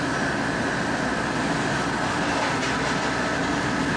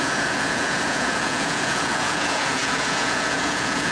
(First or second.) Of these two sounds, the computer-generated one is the second